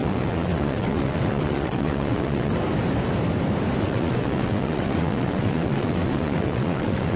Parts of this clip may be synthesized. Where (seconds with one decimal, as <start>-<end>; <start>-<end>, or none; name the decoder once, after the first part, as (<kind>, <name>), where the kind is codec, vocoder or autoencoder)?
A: 0.0-2.5 (vocoder, WaveNeXt); 3.8-7.2